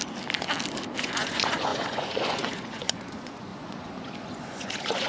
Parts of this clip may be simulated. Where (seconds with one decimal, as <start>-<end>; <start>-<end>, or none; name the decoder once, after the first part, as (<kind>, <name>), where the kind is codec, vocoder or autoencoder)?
1.0-5.1 (vocoder, Vocos)